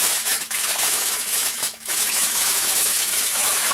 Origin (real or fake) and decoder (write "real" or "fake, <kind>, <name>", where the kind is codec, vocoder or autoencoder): fake, autoencoder, DAC-VAE